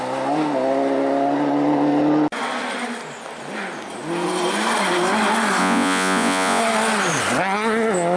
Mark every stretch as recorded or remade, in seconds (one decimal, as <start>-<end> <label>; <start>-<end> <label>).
0.0-5.6 recorded; 5.6-6.6 remade; 6.6-8.2 recorded